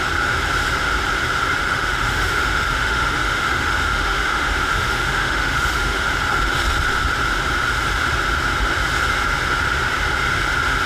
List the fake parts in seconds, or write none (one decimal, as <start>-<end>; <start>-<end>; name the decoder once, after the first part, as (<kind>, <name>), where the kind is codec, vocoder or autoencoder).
1.6-6.2 (autoencoder, DAC-VAE)